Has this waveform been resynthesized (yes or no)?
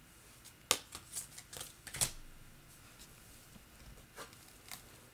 no